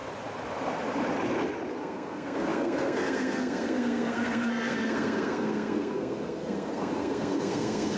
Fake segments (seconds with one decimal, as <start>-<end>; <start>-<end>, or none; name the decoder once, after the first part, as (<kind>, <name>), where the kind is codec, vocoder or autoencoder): 1.8-8.0 (codec, SNAC)